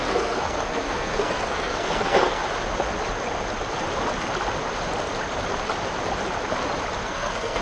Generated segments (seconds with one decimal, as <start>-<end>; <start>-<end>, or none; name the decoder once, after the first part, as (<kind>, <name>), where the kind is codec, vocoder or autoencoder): 0.0-2.4 (codec, SNAC); 7.0-7.6